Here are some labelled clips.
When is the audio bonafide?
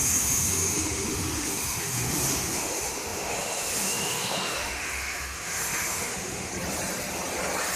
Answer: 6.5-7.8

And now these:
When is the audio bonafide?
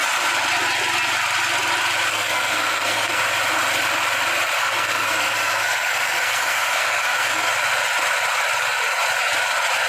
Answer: 0.0-2.1; 3.2-4.6; 7.5-9.9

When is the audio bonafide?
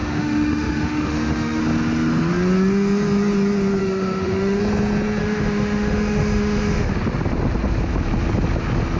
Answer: 1.6-3.8; 4.6-5.2; 6.9-9.0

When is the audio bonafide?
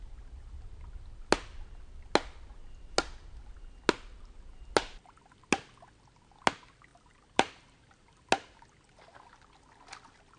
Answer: 0.0-6.9; 8.3-10.4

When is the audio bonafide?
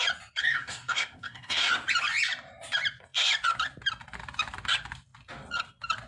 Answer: 0.0-0.4; 1.7-6.1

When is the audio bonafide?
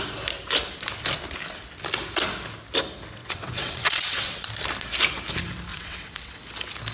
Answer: 0.0-3.2; 4.5-5.7; 6.4-6.9